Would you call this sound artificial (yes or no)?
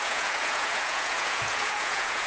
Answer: yes